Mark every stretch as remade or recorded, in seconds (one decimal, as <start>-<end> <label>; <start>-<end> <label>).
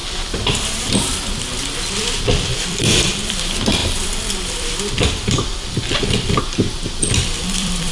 0.0-0.9 remade; 0.9-2.5 recorded; 2.5-3.4 remade; 3.4-3.8 recorded; 3.8-6.4 remade; 6.4-7.0 recorded; 7.0-7.9 remade